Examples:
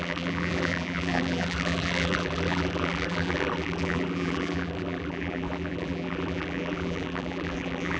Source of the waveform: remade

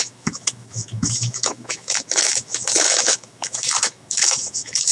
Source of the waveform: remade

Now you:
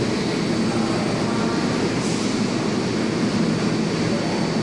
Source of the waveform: recorded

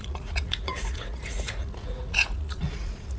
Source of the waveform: remade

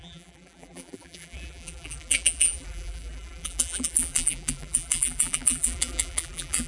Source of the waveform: remade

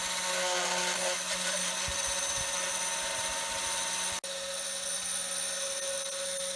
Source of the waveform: recorded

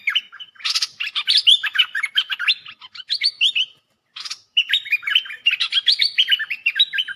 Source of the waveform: remade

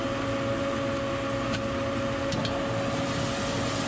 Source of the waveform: recorded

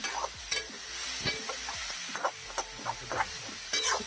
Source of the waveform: recorded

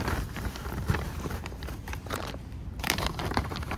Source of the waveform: remade